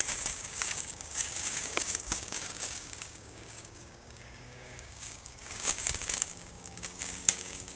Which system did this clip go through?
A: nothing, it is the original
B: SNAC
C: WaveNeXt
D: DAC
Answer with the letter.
D